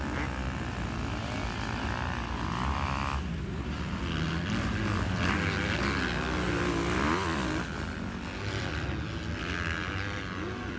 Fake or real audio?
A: real